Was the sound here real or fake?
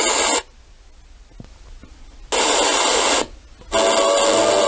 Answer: real